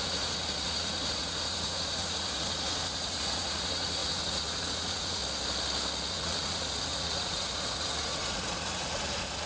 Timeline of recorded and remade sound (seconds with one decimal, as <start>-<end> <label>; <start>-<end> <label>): 0.0-5.2 remade; 5.2-6.1 recorded; 6.1-9.5 remade

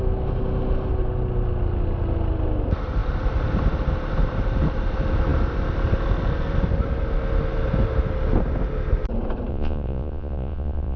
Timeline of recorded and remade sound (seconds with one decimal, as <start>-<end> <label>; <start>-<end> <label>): 0.0-9.5 recorded; 9.5-11.0 remade

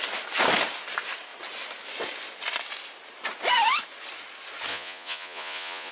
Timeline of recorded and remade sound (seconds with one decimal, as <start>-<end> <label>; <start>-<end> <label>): 0.0-4.7 recorded; 4.7-5.9 remade

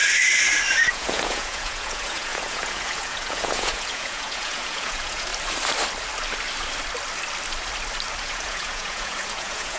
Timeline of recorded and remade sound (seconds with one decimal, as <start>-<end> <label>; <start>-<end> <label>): 0.0-0.9 recorded; 0.9-5.3 remade; 5.3-8.2 recorded; 8.2-9.8 remade

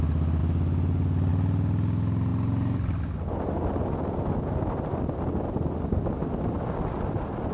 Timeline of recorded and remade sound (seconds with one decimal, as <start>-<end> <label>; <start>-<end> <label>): 0.0-7.5 recorded

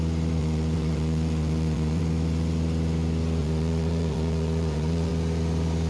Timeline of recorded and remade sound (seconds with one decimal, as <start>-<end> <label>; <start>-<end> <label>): 0.0-0.4 recorded; 0.4-2.0 remade; 2.0-3.4 recorded; 3.4-5.1 remade; 5.1-5.9 recorded

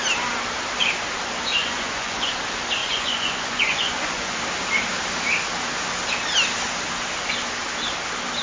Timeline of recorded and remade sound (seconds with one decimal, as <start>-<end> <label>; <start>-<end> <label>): 0.0-1.6 recorded; 1.6-2.3 remade; 2.3-2.8 recorded; 2.8-4.4 remade; 4.4-8.4 recorded

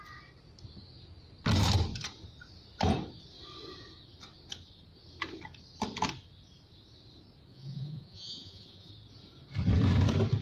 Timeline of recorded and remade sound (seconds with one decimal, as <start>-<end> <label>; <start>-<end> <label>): 0.0-7.5 recorded; 7.5-8.9 remade; 8.9-10.4 recorded